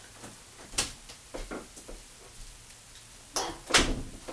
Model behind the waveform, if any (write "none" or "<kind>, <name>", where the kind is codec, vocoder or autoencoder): none